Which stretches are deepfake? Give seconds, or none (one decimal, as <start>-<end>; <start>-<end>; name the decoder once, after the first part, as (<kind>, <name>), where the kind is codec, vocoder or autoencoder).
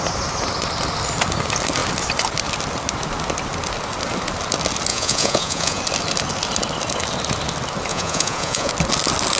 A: 4.9-5.8 (vocoder, Vocos); 7.9-8.7